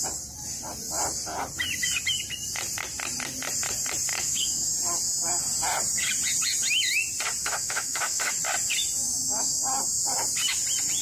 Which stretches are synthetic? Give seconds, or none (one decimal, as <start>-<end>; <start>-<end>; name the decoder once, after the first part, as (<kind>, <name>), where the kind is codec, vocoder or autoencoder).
4.1-4.7 (autoencoder, DAC-VAE); 7.4-8.3; 9.0-9.6

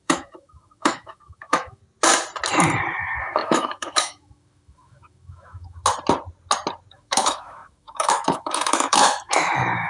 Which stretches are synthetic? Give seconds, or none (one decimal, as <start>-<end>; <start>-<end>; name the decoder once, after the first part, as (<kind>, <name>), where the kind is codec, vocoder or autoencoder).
0.0-1.8 (autoencoder, DAC-VAE); 3.0-5.8; 6.9-9.9

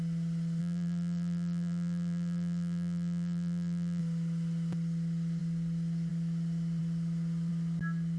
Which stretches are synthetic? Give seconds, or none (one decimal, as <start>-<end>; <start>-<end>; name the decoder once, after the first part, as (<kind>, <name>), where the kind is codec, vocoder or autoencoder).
0.6-4.0 (vocoder, BigVGAN v2)

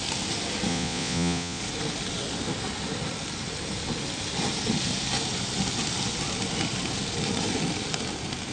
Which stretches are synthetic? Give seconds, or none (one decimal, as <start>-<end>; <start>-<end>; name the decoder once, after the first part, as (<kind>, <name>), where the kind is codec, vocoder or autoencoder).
0.7-1.6 (vocoder, Vocos)

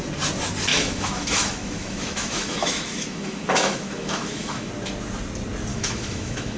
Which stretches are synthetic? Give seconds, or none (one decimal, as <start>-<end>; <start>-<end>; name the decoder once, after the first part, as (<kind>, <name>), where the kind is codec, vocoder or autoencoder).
0.7-4.7 (autoencoder, DAC-VAE); 5.7-6.6

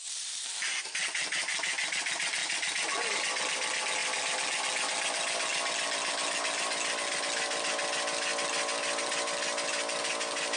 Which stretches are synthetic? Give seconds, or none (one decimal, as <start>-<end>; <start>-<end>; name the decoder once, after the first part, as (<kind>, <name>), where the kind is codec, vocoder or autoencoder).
none